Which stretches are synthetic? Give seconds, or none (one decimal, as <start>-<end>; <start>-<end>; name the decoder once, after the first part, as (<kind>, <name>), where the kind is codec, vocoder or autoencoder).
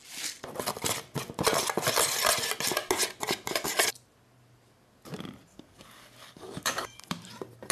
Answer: 5.5-7.0 (codec, DAC)